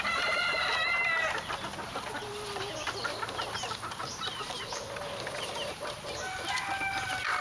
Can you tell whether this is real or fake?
real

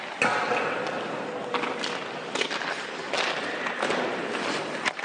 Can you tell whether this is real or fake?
real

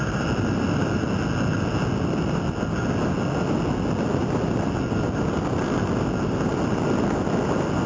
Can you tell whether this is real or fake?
real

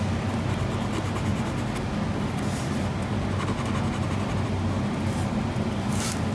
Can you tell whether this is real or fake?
real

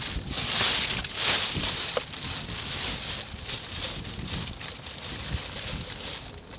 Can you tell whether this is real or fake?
real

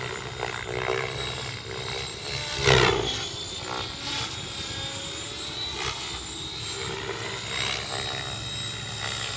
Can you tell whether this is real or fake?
real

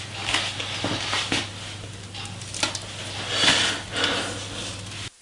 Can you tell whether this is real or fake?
real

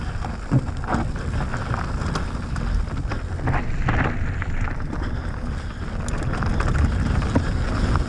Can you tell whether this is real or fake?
real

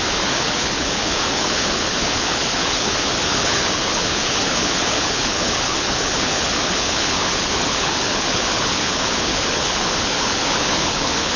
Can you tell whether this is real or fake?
fake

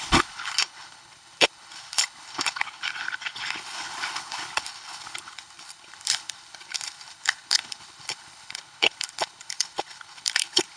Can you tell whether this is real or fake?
fake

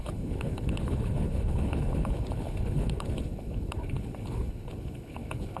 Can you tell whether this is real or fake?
fake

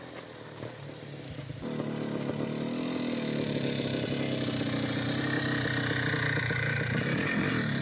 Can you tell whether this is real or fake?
real